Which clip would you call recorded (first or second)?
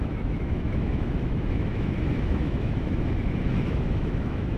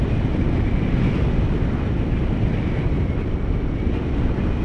second